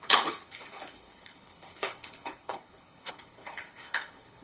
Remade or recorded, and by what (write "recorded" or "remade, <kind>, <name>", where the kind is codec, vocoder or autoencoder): remade, codec, HILCodec